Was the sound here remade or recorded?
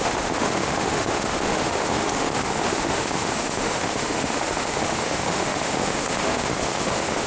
remade